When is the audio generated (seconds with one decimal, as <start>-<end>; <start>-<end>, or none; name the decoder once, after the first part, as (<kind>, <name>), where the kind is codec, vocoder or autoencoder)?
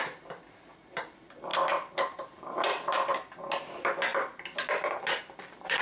0.0-3.1 (vocoder, BigVGAN v2); 3.6-4.1; 5.2-5.8